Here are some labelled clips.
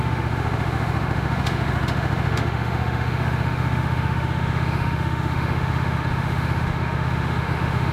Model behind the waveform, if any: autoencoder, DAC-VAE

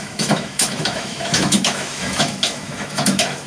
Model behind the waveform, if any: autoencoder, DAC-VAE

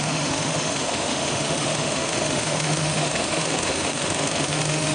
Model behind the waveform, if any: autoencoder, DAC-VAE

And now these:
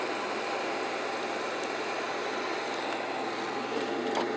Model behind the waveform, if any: none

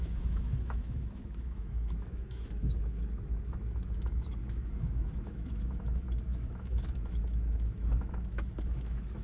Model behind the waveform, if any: autoencoder, DAC-VAE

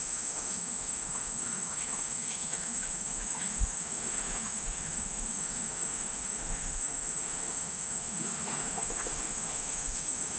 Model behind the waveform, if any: autoencoder, DAC-VAE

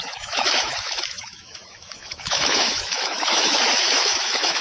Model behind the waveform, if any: autoencoder, DAC-VAE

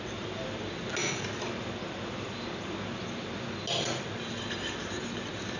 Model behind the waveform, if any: none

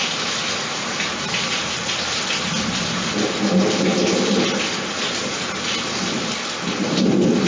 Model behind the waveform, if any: none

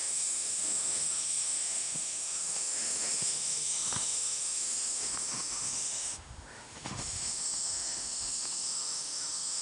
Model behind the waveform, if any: autoencoder, DAC-VAE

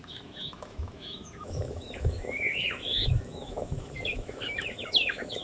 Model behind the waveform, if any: autoencoder, DAC-VAE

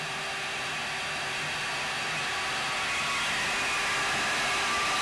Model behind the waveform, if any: none